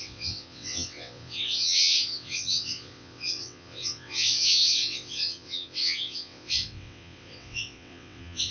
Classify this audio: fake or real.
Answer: fake